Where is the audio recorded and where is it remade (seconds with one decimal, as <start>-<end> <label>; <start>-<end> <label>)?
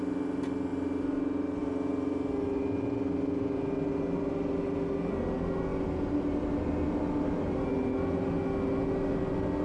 0.0-9.6 recorded